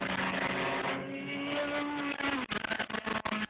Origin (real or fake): real